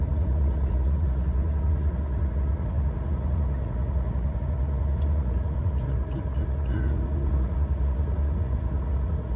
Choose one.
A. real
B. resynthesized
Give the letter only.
B